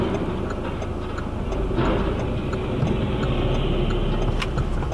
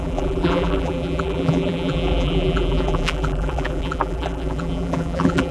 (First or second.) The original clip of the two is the first